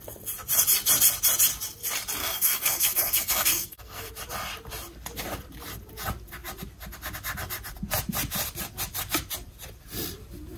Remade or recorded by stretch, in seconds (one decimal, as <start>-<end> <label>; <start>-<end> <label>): 0.0-2.2 recorded; 2.2-4.1 remade; 4.1-10.6 recorded